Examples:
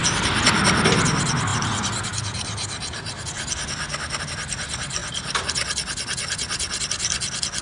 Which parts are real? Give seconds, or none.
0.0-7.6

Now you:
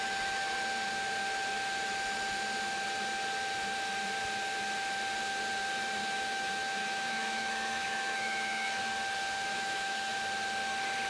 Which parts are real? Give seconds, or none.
0.0-6.0; 8.8-9.5; 10.1-11.1

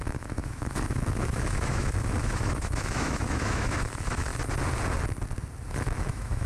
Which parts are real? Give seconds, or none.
4.3-5.7